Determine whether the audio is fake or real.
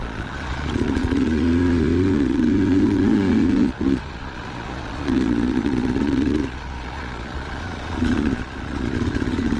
fake